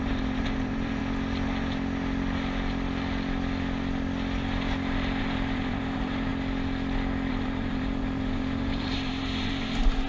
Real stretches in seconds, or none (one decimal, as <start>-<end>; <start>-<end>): 1.0-5.2; 6.3-7.3